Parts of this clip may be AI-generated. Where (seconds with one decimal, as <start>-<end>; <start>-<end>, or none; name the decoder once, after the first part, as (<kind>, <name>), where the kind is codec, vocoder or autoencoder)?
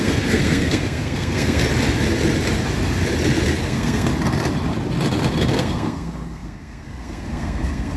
0.0-1.6 (codec, SNAC); 3.6-4.1; 5.5-8.0